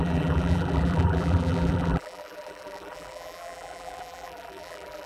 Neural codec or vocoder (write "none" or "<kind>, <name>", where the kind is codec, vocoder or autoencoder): vocoder, BigVGAN v2